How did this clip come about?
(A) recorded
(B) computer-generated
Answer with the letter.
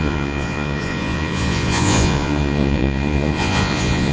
B